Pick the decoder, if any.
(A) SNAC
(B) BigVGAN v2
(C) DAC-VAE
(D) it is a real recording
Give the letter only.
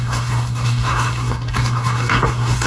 A